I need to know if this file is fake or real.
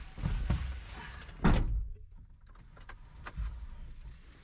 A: real